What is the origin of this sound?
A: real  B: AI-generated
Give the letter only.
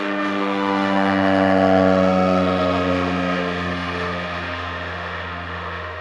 B